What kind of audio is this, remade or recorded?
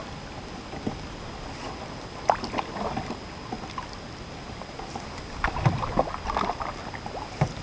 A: recorded